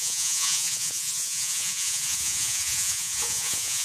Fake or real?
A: fake